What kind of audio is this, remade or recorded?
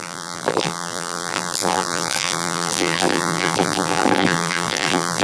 remade